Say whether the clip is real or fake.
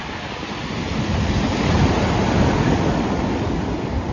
real